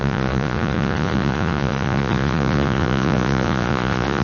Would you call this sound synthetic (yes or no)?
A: yes